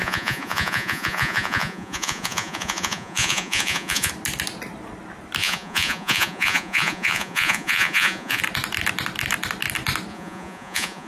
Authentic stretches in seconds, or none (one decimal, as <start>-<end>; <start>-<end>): 4.1-5.4; 8.4-10.1